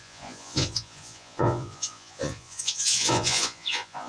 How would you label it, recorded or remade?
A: remade